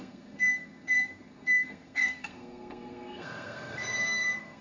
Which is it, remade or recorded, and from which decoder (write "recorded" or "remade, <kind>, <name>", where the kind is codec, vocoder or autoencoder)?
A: remade, codec, SNAC